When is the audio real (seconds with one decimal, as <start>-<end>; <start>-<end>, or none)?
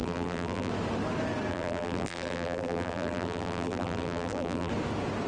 0.7-1.5; 4.7-5.3